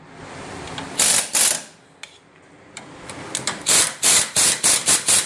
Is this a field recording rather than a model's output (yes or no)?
yes